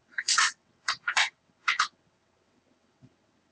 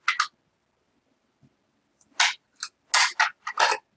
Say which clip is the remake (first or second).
first